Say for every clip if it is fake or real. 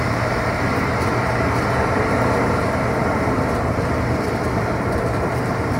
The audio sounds fake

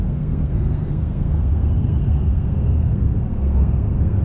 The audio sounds fake